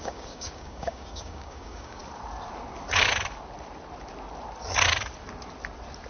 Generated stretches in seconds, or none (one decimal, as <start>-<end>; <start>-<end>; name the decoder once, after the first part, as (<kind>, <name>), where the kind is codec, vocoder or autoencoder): 0.0-2.0 (codec, DAC)